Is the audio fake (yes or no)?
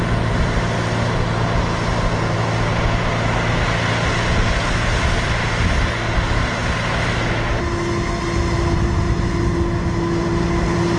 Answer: no